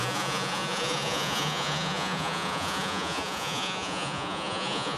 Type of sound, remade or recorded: remade